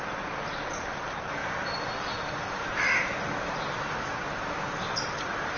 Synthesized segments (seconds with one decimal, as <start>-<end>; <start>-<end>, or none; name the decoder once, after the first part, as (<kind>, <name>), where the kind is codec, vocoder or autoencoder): none